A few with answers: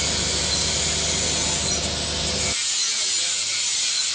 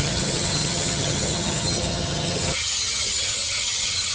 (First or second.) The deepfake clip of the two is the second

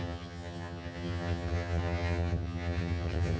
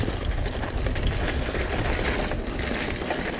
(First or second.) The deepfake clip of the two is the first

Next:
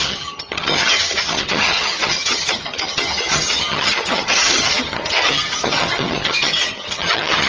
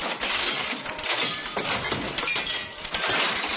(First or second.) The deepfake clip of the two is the first